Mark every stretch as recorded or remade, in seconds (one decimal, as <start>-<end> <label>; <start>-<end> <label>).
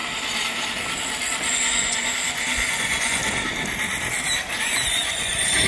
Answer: 0.0-1.5 recorded; 1.5-3.2 remade; 3.2-4.6 recorded; 4.6-5.7 remade